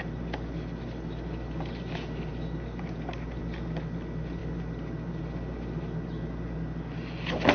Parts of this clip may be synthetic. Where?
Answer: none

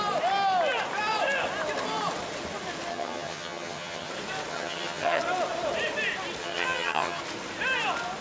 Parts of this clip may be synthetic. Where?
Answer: 2.9-4.1 (vocoder, HiFi-GAN); 4.5-5.2; 6.4-7.2

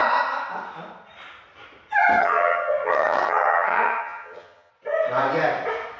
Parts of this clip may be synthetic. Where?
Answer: 2.2-4.7 (vocoder, HiFi-GAN)

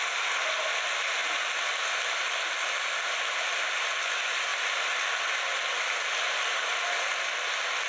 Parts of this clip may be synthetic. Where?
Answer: none

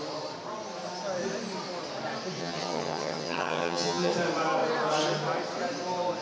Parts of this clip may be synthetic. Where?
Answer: 2.4-4.1 (vocoder, HiFi-GAN)

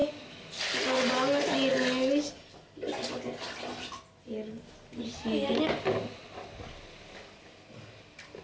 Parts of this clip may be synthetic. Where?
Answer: none

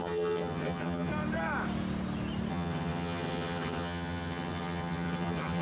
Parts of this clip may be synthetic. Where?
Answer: 0.0-1.1 (vocoder, HiFi-GAN); 2.5-5.6